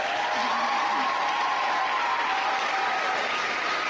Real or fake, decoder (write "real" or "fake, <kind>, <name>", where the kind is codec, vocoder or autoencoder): real